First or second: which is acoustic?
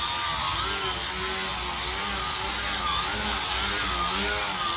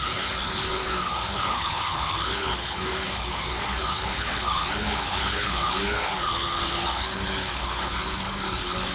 first